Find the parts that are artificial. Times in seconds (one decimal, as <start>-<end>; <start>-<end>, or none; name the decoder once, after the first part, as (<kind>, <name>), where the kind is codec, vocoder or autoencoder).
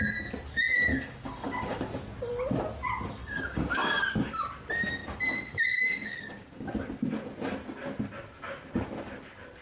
0.9-1.8 (codec, DAC); 3.2-4.4; 5.0-6.7